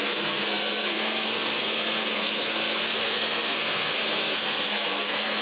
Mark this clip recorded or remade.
remade